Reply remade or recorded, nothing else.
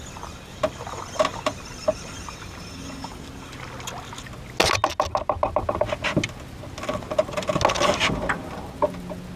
recorded